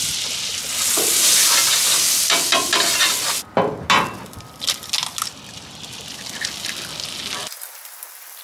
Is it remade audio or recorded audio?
recorded